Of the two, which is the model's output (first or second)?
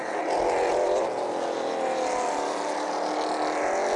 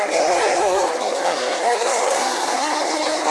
second